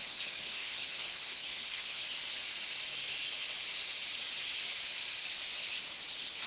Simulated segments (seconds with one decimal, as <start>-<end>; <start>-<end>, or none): 0.0-2.0